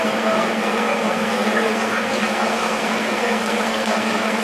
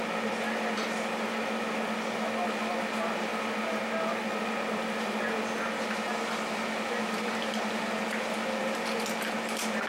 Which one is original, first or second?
second